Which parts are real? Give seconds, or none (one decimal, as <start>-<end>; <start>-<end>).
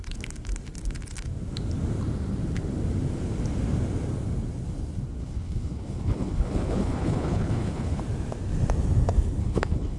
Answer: 0.0-5.2; 8.0-9.4